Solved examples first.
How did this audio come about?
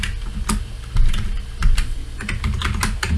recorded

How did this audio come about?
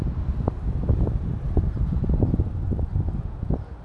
recorded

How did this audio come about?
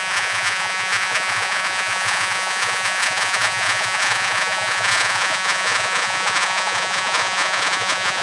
remade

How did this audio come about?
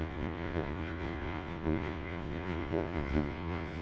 remade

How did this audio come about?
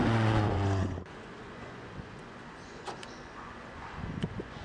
remade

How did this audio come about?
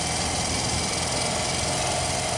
recorded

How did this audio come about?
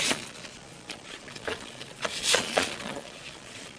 remade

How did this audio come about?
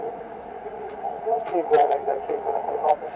remade